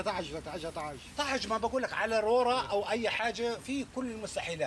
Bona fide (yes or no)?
yes